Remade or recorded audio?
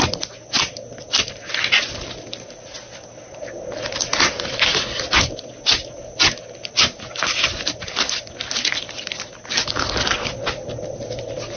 recorded